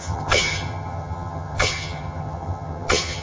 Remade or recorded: remade